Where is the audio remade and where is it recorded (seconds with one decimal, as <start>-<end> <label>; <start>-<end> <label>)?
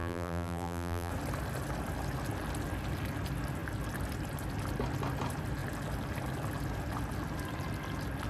0.0-1.1 remade; 1.1-8.3 recorded